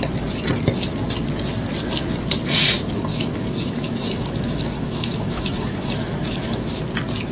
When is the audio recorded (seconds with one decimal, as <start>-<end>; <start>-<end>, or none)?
0.0-3.1; 6.8-7.3